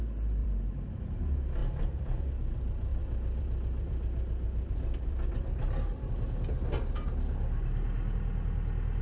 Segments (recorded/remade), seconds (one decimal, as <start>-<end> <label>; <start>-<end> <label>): 0.0-0.4 recorded; 0.4-1.2 remade; 1.2-1.6 recorded; 1.6-2.2 remade; 2.2-2.9 recorded; 2.9-6.1 remade; 6.1-9.0 recorded